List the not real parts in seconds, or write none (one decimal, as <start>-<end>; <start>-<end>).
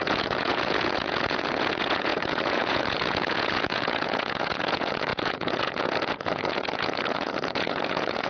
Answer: 0.0-8.3